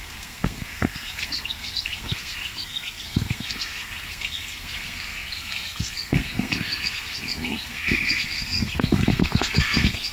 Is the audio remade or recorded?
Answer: remade